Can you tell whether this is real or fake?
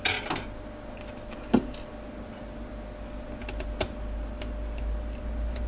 real